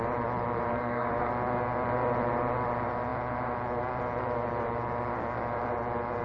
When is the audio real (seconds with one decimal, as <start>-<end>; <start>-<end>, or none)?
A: 0.0-0.7; 1.3-6.2